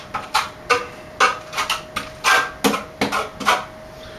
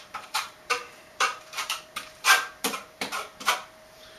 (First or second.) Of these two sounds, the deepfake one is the second